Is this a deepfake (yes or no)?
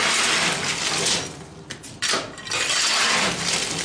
no